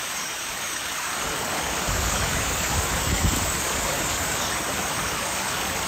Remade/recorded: remade